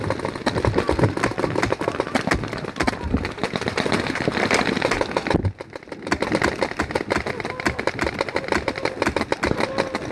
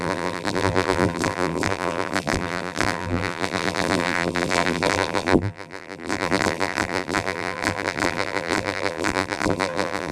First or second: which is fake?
second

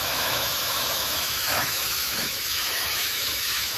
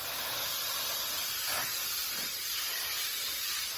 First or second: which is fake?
first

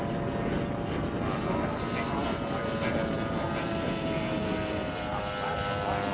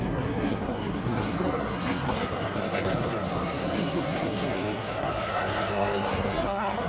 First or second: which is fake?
second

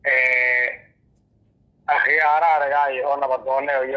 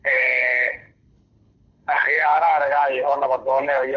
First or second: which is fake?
second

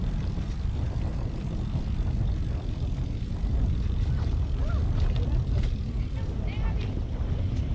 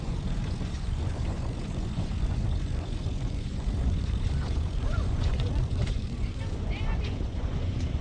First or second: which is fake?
second